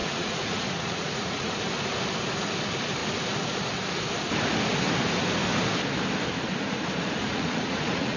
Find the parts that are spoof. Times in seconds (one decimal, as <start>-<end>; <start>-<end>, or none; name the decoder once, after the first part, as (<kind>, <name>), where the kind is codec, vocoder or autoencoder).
0.0-1.5 (vocoder, Vocos); 7.2-8.2